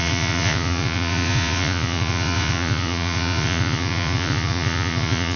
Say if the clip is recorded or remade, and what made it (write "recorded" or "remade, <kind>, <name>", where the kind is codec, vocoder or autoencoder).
remade, vocoder, Vocos